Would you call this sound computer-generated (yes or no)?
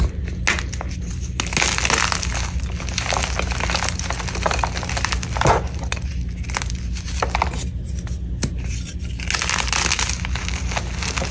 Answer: no